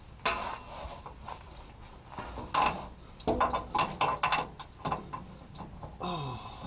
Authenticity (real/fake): real